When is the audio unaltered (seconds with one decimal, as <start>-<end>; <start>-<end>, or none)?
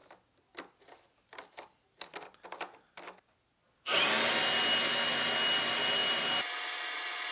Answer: 0.0-7.3